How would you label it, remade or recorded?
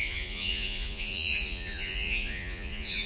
remade